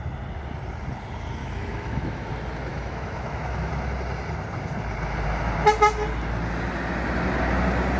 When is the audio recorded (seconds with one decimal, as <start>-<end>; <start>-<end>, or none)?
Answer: 0.0-1.4; 2.3-2.7; 3.7-8.0